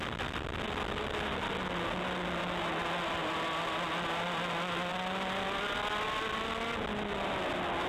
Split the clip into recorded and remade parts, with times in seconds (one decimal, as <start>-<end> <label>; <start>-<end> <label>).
0.0-7.9 recorded